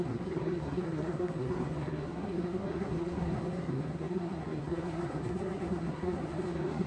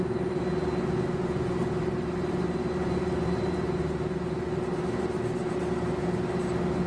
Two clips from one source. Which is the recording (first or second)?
second